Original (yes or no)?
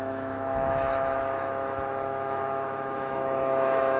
no